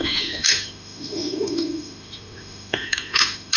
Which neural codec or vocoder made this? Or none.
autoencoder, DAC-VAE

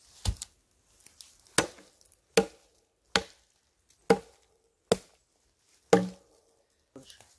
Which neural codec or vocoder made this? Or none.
none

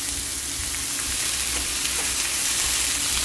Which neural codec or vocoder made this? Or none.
none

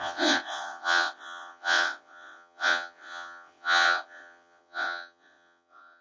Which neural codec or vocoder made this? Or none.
vocoder, WaveNeXt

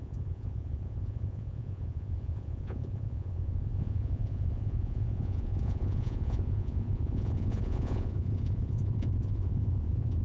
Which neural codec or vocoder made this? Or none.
vocoder, Vocos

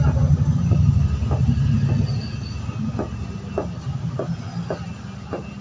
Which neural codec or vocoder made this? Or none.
none